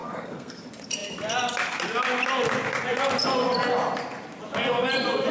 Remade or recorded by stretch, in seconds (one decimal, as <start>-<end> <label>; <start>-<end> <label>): 0.0-0.6 remade; 0.6-5.3 recorded